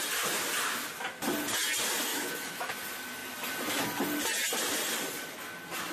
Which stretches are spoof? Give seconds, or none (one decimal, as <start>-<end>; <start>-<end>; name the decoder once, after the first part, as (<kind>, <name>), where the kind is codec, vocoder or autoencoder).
2.1-2.7 (autoencoder, DAC-VAE)